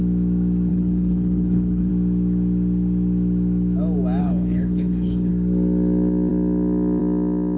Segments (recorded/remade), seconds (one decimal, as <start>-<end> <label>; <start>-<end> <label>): 0.0-0.7 recorded; 0.7-1.9 remade; 1.9-4.2 recorded; 4.2-5.3 remade; 5.3-7.6 recorded